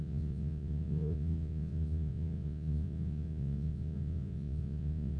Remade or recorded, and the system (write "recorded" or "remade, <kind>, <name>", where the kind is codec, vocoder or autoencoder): remade, vocoder, Vocos